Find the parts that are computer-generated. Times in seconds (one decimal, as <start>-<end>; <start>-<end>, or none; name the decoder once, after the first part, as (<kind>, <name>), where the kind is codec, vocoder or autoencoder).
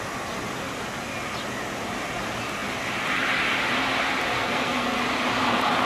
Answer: 4.3-5.0 (codec, SNAC)